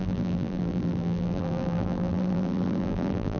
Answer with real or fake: fake